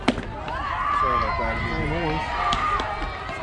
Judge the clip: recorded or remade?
recorded